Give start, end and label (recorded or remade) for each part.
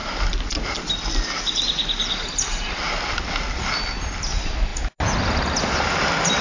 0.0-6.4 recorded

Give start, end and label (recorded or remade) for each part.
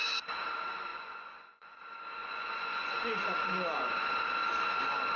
0.0-0.9 recorded; 0.9-1.8 remade; 1.8-2.2 recorded; 2.2-4.1 remade; 4.1-5.2 recorded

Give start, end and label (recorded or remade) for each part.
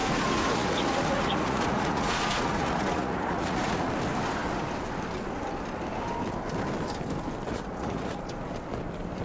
0.0-3.9 remade; 3.9-7.5 recorded; 7.5-8.2 remade; 8.2-9.2 recorded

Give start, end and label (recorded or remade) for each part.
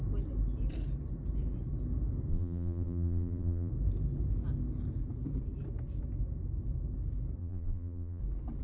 0.0-2.3 recorded; 2.3-3.7 remade; 3.7-7.4 recorded; 7.4-8.2 remade; 8.2-8.6 recorded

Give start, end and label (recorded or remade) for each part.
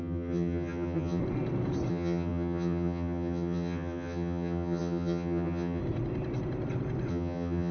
0.0-1.2 remade; 1.2-1.9 recorded; 1.9-5.8 remade; 5.8-7.1 recorded; 7.1-7.7 remade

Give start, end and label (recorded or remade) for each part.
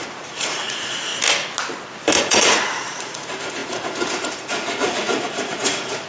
0.0-1.1 remade; 1.1-2.2 recorded; 2.2-6.1 remade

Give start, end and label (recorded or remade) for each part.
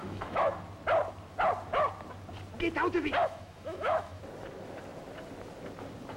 0.0-0.5 remade; 0.5-3.2 recorded; 3.2-4.2 remade; 4.2-6.2 recorded